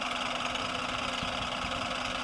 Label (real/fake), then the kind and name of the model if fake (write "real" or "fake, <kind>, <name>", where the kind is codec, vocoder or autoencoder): real